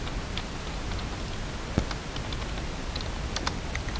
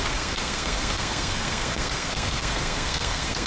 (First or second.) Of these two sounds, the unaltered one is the first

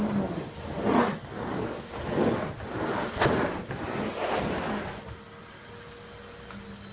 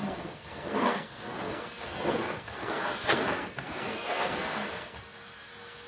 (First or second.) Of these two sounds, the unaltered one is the first